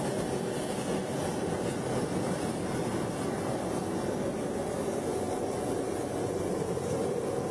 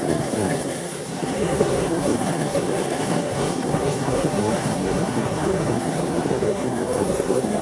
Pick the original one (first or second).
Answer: first